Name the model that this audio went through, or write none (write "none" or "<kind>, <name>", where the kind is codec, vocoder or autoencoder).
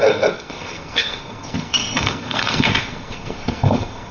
codec, SNAC